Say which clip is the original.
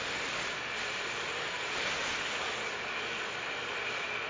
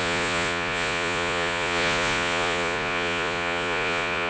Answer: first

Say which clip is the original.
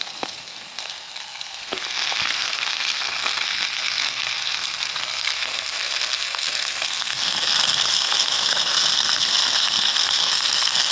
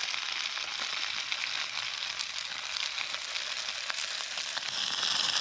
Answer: second